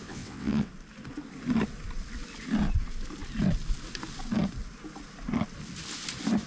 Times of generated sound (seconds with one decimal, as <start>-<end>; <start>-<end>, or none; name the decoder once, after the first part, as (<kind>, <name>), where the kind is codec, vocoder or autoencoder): 0.0-0.7 (vocoder, WaveNeXt)